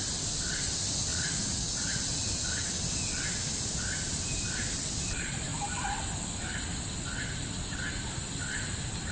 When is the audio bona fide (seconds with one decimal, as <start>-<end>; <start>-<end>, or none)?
0.0-1.1; 2.0-9.1